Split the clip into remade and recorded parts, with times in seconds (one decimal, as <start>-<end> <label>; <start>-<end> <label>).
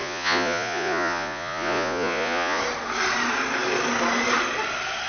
0.0-2.6 remade; 2.6-5.1 recorded